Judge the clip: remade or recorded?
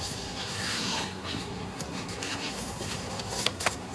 remade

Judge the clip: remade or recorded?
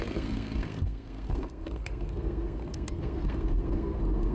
remade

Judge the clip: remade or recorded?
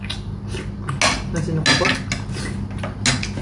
recorded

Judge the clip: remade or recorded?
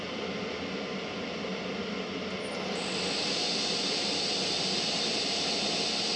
recorded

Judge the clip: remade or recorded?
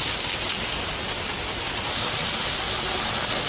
recorded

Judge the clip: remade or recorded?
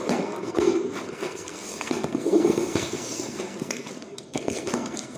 remade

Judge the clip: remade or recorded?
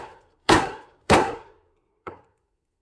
remade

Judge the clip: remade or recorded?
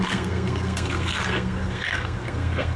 remade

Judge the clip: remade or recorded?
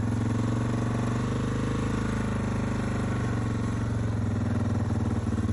recorded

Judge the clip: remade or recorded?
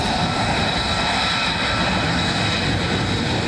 recorded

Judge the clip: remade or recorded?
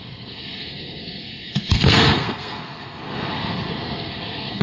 remade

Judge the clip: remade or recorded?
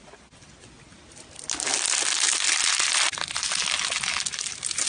recorded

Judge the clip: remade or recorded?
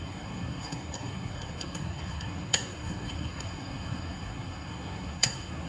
remade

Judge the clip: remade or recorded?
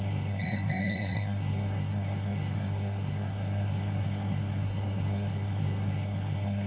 remade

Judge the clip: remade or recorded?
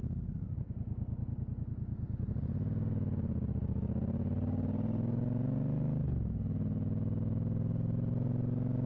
recorded